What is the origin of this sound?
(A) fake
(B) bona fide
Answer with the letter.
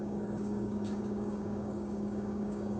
A